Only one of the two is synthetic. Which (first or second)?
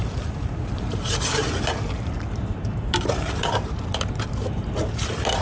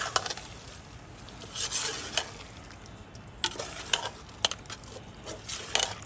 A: first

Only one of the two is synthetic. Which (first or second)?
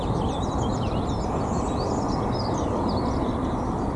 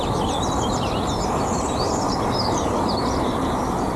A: second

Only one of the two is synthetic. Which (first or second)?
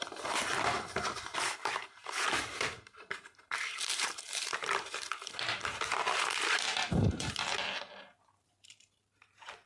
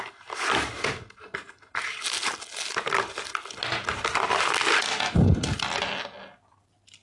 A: first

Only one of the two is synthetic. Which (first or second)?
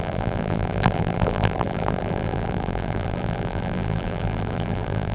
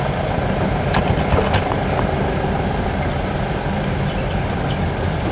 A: first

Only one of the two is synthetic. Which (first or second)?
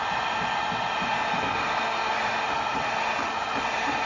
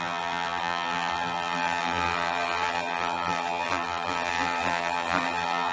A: second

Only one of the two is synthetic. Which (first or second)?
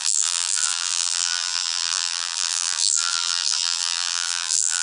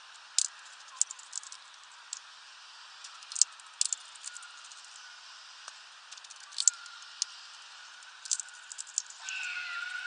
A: first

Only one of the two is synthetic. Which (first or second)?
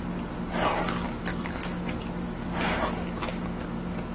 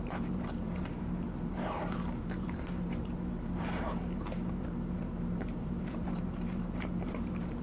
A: second